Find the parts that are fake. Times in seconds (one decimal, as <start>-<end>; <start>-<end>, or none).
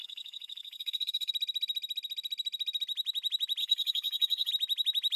0.0-1.3; 3.6-4.5